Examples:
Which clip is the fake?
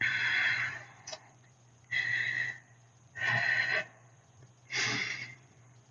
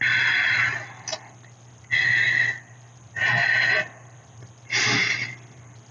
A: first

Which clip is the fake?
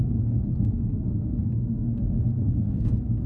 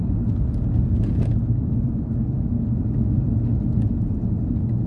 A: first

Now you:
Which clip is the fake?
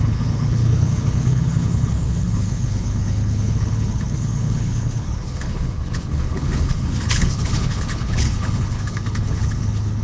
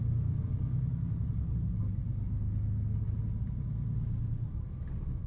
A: first